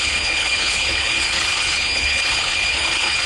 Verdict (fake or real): fake